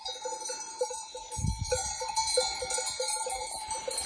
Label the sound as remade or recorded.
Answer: recorded